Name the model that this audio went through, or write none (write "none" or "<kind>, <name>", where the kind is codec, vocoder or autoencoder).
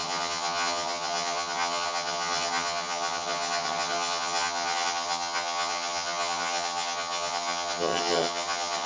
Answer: vocoder, HiFi-GAN